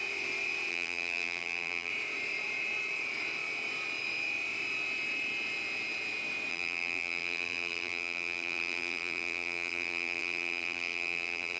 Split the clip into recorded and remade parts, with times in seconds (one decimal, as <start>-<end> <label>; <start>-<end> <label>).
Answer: 0.0-0.7 recorded; 0.7-1.9 remade; 1.9-6.5 recorded; 6.5-11.6 remade